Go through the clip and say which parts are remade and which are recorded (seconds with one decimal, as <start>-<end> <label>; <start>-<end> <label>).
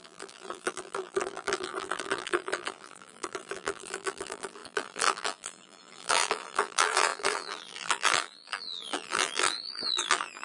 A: 0.0-10.4 remade